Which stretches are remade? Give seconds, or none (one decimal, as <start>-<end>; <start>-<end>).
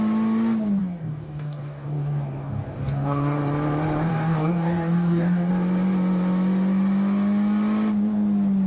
0.8-3.4; 4.1-5.5